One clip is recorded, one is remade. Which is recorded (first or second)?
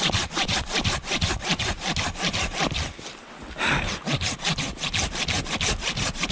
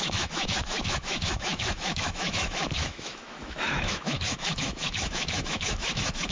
first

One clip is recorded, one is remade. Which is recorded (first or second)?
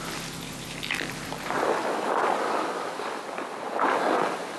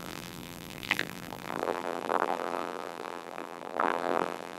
first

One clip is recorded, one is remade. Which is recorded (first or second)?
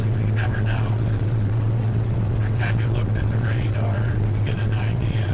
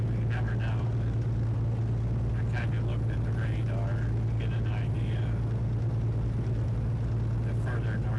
second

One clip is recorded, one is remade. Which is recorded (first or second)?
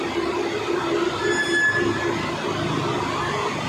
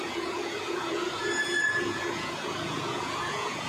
first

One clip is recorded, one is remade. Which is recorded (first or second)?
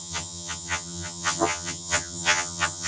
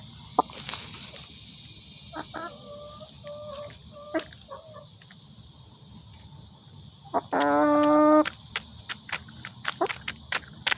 second